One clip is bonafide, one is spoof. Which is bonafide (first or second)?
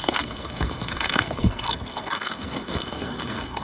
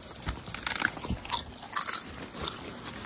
second